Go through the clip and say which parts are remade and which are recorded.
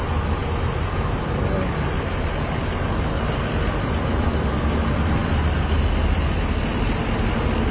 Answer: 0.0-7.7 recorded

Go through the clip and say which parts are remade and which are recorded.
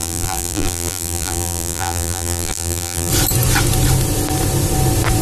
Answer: 0.0-3.1 remade; 3.1-5.2 recorded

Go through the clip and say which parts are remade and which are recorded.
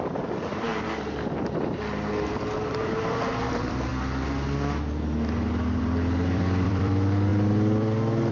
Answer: 0.0-0.7 remade; 0.7-2.7 recorded; 2.7-3.9 remade; 3.9-5.8 recorded; 5.8-8.3 remade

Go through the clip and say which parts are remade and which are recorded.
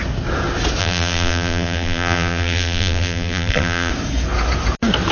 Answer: 0.0-0.8 recorded; 0.8-3.9 remade; 3.9-5.1 recorded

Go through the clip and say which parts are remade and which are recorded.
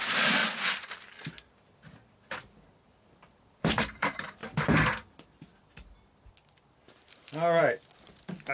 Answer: 0.0-0.4 remade; 0.4-2.4 recorded; 2.4-4.4 remade; 4.4-5.1 recorded; 5.1-5.5 remade; 5.5-7.6 recorded; 7.6-8.5 remade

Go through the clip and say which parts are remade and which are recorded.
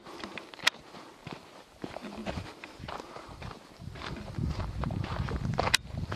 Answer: 0.0-2.2 remade; 2.2-2.9 recorded; 2.9-6.2 remade